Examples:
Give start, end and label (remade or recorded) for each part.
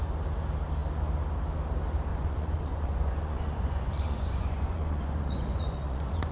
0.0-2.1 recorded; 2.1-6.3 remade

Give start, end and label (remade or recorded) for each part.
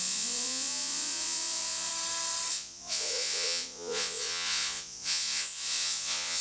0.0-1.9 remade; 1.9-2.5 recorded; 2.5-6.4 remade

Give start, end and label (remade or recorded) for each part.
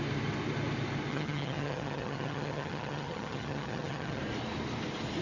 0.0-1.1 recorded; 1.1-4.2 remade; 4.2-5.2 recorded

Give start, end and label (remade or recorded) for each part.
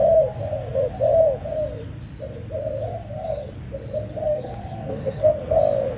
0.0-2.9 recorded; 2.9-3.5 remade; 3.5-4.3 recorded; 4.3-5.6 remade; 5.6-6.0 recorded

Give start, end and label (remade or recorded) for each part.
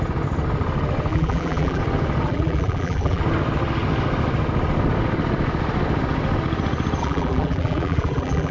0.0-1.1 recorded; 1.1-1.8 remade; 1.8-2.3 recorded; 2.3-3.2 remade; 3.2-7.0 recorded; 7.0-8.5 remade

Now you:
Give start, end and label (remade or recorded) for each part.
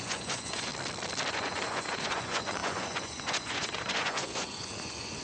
0.0-0.7 remade; 0.7-1.3 recorded; 1.3-5.2 remade